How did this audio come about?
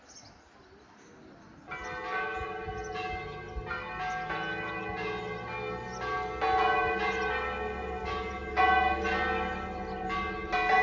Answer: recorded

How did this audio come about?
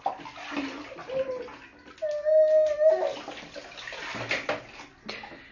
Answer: recorded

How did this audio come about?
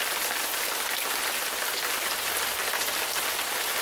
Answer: recorded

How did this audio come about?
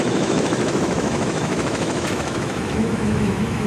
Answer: remade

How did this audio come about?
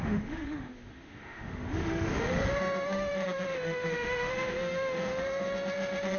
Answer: remade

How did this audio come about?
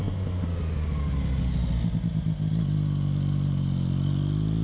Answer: recorded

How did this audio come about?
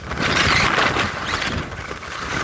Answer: recorded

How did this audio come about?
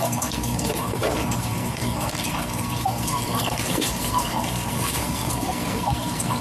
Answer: remade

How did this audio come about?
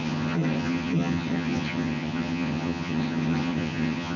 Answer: remade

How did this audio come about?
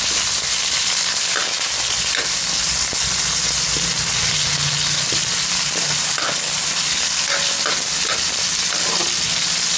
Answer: recorded